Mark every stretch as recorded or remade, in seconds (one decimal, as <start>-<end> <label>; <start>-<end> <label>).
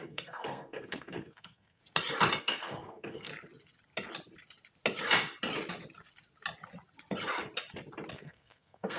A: 0.0-1.8 remade; 1.8-2.4 recorded; 2.4-3.3 remade; 3.3-8.1 recorded; 8.1-9.0 remade